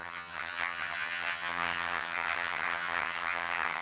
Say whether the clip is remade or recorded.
remade